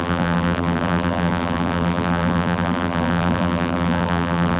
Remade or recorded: remade